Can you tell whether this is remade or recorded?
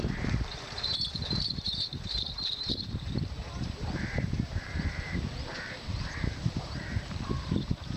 remade